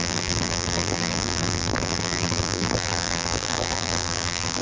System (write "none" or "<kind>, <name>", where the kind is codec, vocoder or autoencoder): vocoder, BigVGAN v2